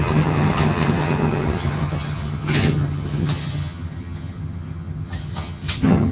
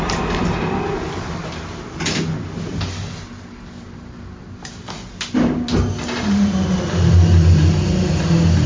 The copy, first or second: first